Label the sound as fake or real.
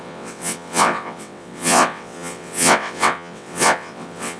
fake